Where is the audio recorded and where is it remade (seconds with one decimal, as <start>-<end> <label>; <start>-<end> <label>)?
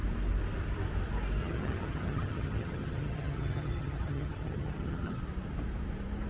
0.0-1.4 recorded; 1.4-5.2 remade; 5.2-6.3 recorded